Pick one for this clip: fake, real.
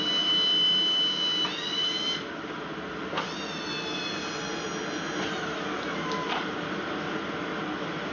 real